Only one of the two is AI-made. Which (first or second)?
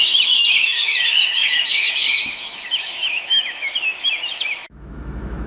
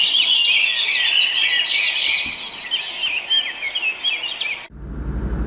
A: first